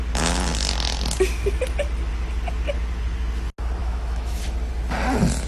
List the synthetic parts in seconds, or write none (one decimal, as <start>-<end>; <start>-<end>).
3.8-4.4